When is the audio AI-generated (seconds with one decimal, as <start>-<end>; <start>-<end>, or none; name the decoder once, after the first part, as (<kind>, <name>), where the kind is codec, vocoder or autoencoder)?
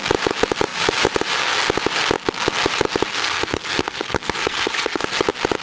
3.1-5.0 (codec, SNAC)